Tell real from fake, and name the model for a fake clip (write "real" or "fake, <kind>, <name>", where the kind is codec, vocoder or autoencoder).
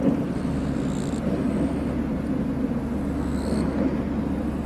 real